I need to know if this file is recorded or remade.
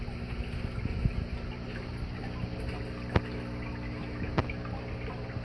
recorded